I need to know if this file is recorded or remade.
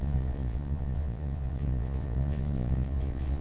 remade